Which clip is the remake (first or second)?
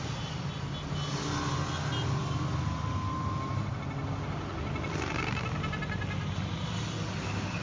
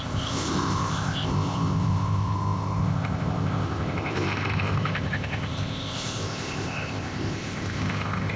second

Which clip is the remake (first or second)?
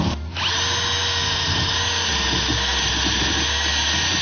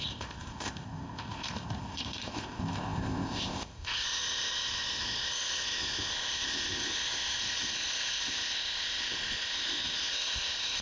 second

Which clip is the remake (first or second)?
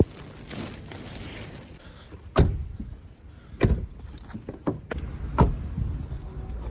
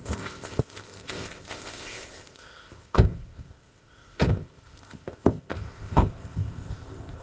second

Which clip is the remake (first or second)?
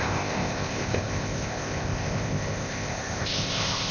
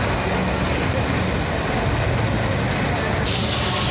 first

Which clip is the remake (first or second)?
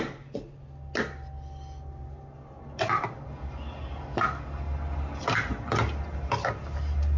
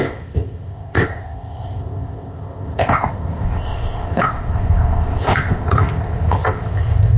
second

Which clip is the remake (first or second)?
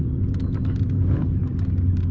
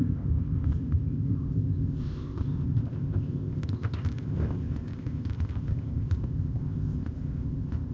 second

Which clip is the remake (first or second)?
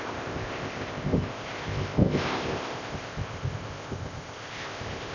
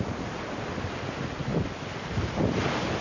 first